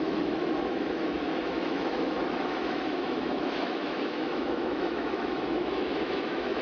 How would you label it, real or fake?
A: fake